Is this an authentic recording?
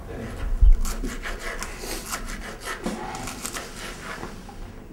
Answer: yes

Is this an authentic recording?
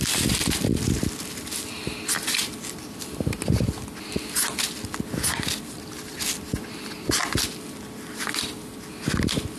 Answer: yes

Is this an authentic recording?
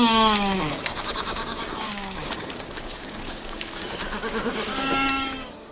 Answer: no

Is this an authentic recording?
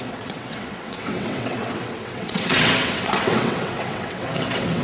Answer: no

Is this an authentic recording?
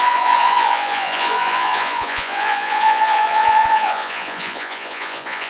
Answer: no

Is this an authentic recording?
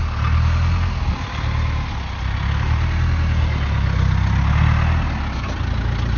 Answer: yes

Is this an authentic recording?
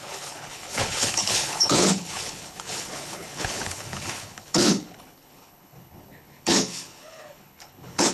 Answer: no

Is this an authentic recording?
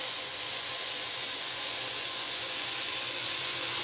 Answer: no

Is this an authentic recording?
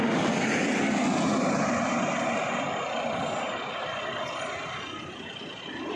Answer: yes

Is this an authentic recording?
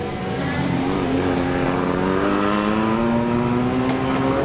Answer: yes